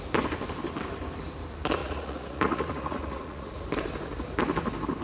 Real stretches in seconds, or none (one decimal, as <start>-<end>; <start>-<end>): 0.0-1.8; 3.6-5.0